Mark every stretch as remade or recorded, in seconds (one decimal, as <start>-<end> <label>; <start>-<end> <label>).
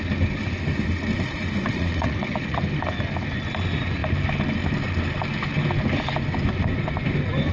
0.0-1.7 recorded; 1.7-2.6 remade; 2.6-7.5 recorded